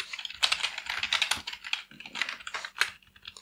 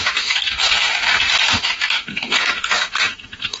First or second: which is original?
first